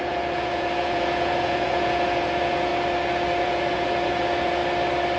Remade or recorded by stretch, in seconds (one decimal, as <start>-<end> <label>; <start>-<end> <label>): 0.0-2.7 remade; 2.7-3.4 recorded; 3.4-4.6 remade; 4.6-5.2 recorded